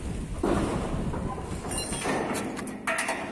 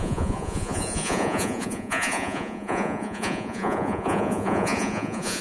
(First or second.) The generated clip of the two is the second